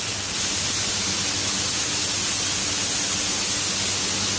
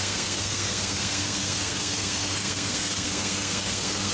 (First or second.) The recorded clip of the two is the first